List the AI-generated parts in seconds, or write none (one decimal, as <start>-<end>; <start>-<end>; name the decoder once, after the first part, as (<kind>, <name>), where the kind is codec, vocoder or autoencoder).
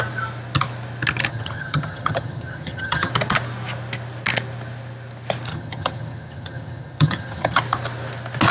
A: 1.3-3.1 (vocoder, HiFi-GAN); 5.5-7.6